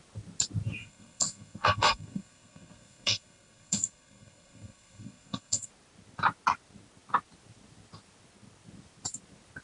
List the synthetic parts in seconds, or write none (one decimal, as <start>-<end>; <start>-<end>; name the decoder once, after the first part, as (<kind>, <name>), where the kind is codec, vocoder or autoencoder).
0.8-5.7 (codec, SNAC)